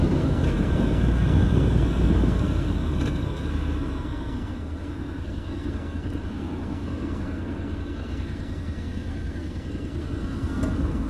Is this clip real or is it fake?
fake